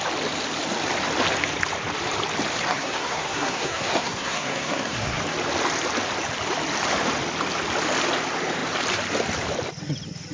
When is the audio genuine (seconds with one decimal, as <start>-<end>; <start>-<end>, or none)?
0.0-2.7; 5.2-10.3

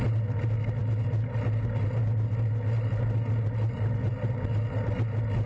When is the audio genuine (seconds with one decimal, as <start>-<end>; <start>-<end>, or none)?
0.0-5.5

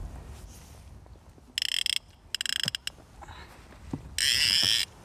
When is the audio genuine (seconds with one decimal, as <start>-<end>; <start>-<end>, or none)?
0.0-5.0

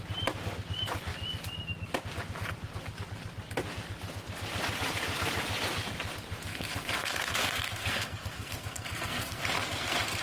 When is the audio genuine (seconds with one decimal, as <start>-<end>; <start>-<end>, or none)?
0.0-6.5

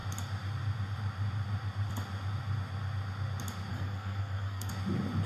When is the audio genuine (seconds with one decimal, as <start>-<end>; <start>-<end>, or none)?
0.0-3.7; 4.7-5.3

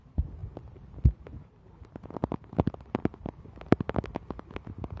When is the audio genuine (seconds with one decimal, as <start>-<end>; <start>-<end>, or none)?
0.0-0.4; 3.4-5.0